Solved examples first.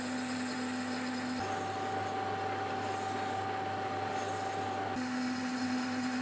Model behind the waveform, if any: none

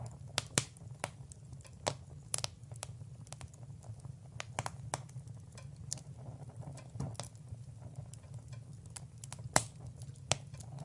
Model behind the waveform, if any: none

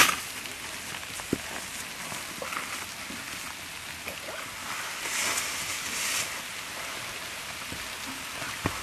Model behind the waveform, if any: none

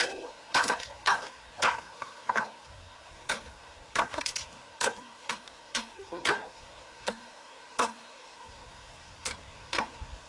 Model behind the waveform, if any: codec, SNAC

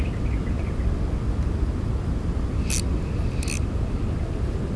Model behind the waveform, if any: none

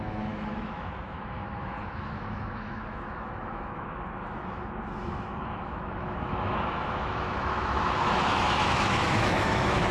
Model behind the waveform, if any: autoencoder, DAC-VAE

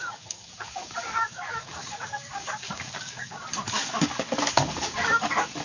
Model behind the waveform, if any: codec, DAC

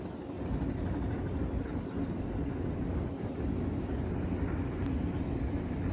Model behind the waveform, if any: none